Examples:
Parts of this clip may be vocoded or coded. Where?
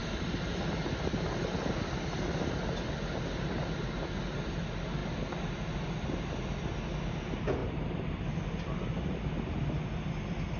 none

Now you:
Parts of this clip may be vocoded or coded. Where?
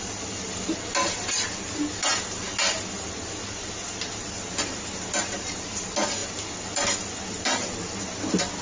none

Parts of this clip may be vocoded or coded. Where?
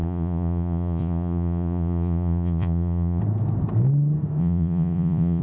0.0-3.2; 4.4-5.4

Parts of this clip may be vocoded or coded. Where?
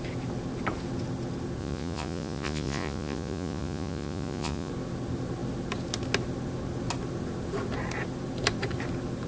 1.6-4.7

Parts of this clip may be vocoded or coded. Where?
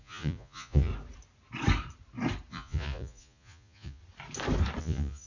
0.0-0.9; 2.5-4.0; 4.8-5.3